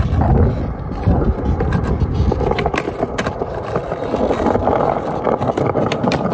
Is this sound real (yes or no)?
yes